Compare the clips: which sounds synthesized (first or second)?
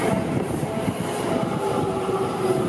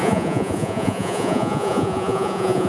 second